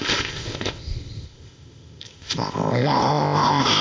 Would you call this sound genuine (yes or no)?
no